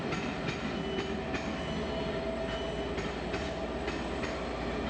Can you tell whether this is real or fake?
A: real